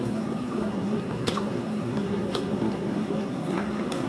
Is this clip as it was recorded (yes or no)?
no